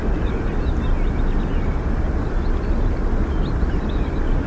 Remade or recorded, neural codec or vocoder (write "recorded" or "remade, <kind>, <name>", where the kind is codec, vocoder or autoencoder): recorded